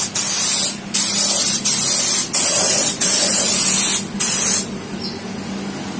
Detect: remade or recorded recorded